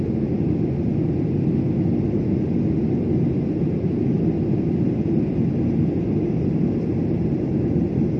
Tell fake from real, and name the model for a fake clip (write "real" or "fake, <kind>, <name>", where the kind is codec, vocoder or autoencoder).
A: real